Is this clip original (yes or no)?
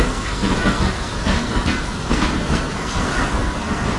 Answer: no